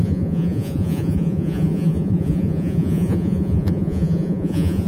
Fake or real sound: fake